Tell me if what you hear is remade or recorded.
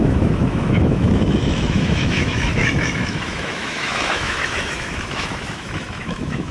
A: remade